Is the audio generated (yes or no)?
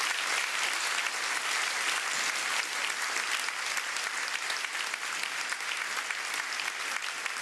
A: no